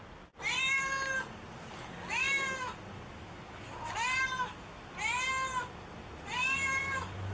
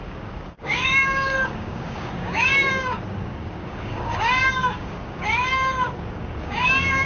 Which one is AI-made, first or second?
second